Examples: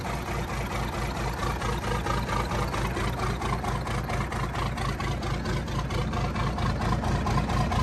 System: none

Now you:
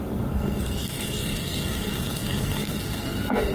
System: codec, SNAC